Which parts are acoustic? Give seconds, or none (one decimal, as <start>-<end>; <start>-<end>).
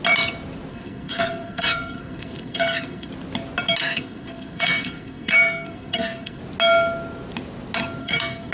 0.0-0.7; 3.1-3.8; 6.4-8.0